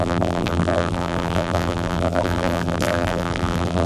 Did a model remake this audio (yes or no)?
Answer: yes